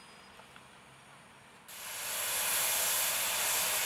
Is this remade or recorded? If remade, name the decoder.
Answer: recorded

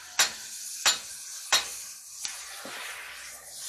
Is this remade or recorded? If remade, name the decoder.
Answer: recorded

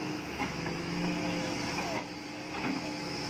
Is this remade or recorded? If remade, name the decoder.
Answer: remade, autoencoder, DAC-VAE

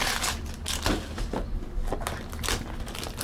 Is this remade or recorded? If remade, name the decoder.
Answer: recorded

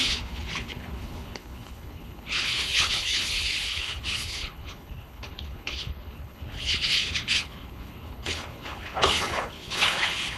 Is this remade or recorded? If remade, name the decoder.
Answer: remade, codec, HILCodec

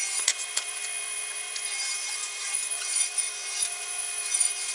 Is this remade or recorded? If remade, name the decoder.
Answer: remade, vocoder, Vocos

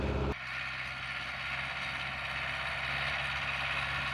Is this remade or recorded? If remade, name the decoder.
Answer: recorded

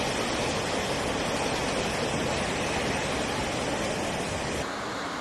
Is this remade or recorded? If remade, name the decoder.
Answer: recorded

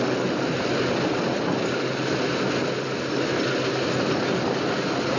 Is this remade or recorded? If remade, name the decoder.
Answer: recorded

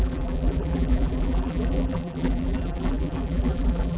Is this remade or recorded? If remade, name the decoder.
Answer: remade, vocoder, BigVGAN v2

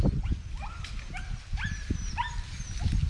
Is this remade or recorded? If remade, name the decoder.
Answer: recorded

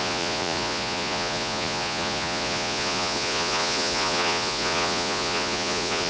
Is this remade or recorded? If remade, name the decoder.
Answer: remade, vocoder, Vocos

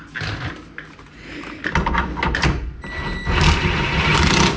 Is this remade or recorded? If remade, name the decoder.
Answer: recorded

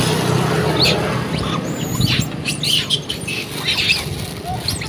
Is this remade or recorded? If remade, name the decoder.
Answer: recorded